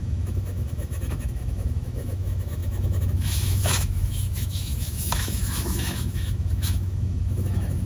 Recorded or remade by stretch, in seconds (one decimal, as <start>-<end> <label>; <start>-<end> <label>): 0.0-7.9 remade